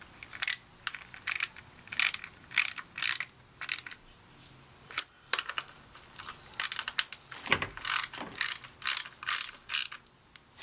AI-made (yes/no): no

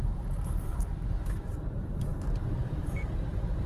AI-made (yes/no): yes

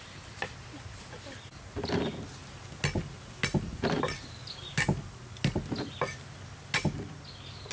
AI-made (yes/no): no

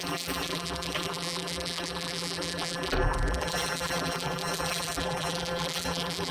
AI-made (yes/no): yes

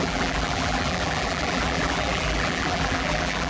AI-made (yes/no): yes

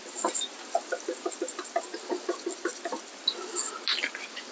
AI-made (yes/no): no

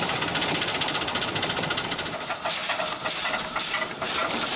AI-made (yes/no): no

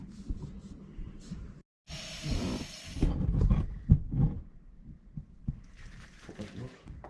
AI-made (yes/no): no